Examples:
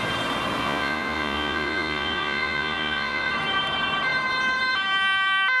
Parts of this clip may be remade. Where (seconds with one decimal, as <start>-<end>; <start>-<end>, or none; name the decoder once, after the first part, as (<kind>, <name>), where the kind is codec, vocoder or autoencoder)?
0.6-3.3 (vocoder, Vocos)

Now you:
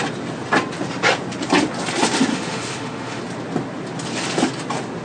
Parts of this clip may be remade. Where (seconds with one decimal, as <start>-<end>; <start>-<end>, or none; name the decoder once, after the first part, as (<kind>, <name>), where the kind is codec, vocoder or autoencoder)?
2.3-3.2 (autoencoder, DAC-VAE)

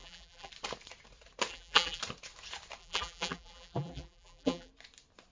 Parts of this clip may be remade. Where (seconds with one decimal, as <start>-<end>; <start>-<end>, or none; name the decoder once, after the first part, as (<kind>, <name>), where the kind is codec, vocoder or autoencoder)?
0.0-0.5 (vocoder, BigVGAN v2); 1.5-2.0; 2.8-4.7

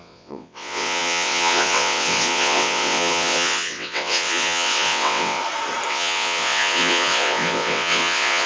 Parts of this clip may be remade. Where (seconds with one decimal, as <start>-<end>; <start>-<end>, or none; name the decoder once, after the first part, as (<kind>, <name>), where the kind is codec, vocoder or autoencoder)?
0.0-5.4 (vocoder, WaveNeXt); 5.9-8.5